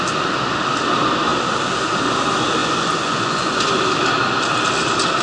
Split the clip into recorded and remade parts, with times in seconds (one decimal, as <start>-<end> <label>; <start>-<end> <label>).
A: 0.0-2.6 recorded; 2.6-3.7 remade; 3.7-5.2 recorded